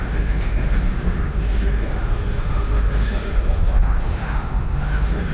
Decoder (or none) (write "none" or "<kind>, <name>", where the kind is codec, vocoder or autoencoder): autoencoder, DAC-VAE